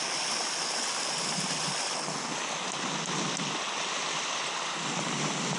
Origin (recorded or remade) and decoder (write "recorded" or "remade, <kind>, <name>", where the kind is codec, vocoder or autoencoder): recorded